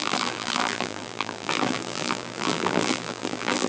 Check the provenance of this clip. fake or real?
fake